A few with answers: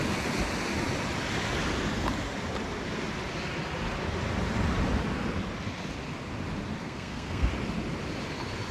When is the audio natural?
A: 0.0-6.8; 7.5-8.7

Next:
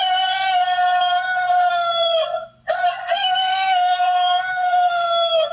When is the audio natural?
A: 0.0-3.0

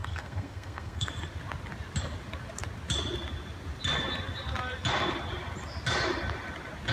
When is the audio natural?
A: 1.1-6.9